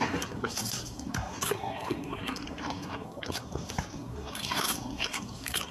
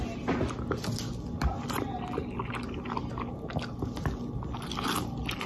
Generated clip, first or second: first